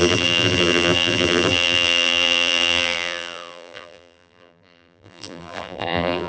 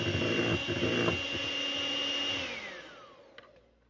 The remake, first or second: first